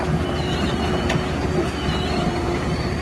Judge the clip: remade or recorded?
recorded